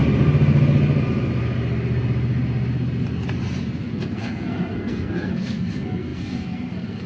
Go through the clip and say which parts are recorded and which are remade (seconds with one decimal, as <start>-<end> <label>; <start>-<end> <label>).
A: 0.0-3.8 recorded; 3.8-7.1 remade